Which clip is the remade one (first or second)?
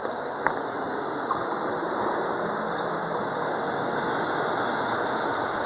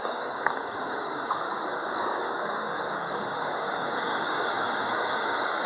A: second